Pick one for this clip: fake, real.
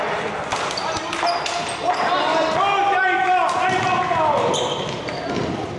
real